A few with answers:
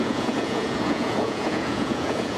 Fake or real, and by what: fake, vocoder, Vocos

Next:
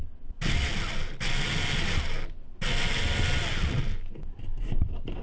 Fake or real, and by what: real